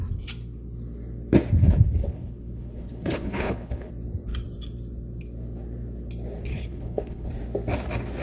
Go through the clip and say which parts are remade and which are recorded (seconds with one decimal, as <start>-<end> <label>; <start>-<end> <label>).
0.0-1.6 recorded; 1.6-3.9 remade; 3.9-6.5 recorded; 6.5-7.3 remade; 7.3-8.2 recorded